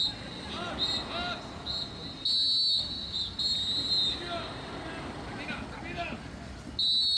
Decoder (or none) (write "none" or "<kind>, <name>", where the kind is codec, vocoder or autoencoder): none